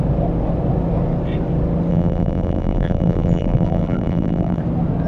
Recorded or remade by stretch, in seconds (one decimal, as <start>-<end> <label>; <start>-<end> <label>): 0.0-1.9 recorded; 1.9-4.6 remade; 4.6-5.1 recorded

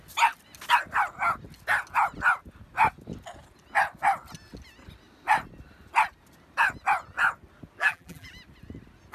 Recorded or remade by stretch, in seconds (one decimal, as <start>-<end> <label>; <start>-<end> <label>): 0.0-7.8 recorded; 7.8-8.3 remade; 8.3-9.1 recorded

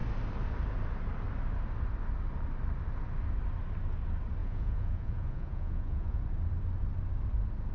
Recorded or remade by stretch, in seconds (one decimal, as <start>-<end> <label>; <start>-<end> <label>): 0.0-4.4 recorded; 4.4-6.2 remade; 6.2-7.7 recorded

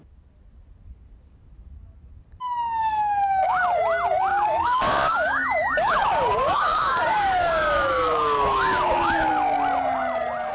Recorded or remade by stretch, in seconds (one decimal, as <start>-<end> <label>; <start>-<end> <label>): 0.0-2.8 recorded; 2.8-3.6 remade; 3.6-4.3 recorded; 4.3-9.3 remade; 9.3-10.5 recorded

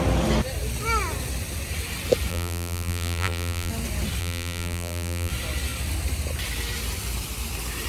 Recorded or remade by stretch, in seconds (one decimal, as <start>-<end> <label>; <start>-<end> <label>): 0.0-2.3 recorded; 2.3-3.7 remade; 3.7-4.2 recorded; 4.2-5.3 remade; 5.3-7.9 recorded